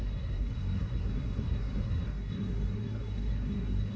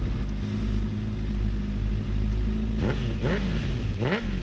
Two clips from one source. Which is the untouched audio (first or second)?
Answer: second